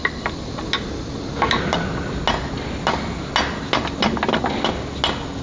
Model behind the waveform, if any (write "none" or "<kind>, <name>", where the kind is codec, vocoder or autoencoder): none